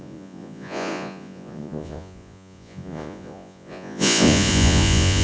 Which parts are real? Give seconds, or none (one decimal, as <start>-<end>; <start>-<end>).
none